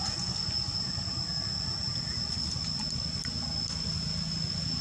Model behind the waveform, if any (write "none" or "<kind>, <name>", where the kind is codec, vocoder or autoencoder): none